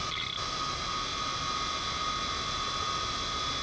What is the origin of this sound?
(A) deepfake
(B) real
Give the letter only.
B